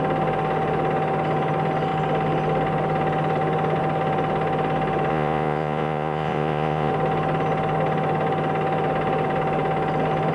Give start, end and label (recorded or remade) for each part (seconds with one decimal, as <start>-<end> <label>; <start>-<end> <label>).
0.0-5.1 recorded; 5.1-6.9 remade; 6.9-10.3 recorded